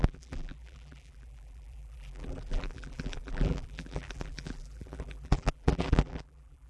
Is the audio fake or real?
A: fake